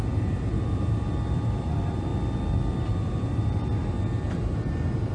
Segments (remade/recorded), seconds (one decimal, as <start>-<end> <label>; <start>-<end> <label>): 0.0-2.1 remade; 2.1-2.9 recorded; 2.9-3.7 remade; 3.7-4.3 recorded; 4.3-5.1 remade